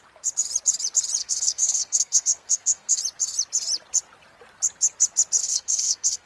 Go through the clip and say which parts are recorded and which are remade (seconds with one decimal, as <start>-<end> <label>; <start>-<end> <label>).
0.0-1.2 recorded; 1.2-3.0 remade; 3.0-5.4 recorded; 5.4-6.3 remade